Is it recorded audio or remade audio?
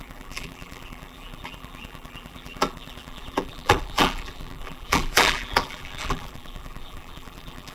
remade